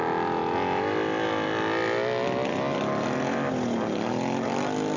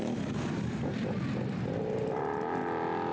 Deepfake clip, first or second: second